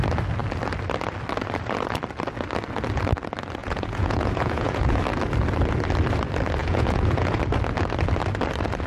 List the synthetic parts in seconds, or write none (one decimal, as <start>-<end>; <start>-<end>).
3.6-5.0; 6.6-7.4

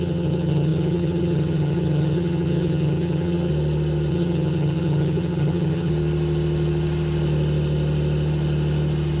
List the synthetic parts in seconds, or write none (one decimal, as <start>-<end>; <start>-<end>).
0.0-3.5; 4.1-5.9

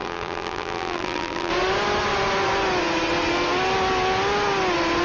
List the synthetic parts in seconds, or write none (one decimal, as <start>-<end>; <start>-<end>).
0.0-1.5

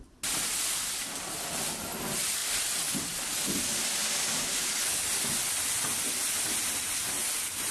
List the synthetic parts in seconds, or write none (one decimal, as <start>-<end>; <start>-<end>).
none

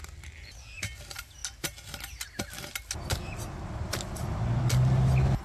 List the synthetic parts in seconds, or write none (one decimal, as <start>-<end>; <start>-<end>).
none